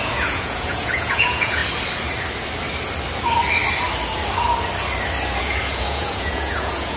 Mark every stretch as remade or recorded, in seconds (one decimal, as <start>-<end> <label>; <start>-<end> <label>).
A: 0.0-1.6 remade; 1.6-5.4 recorded; 5.4-7.0 remade